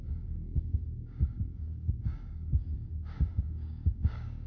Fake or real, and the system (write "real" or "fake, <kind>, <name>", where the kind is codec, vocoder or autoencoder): fake, codec, DAC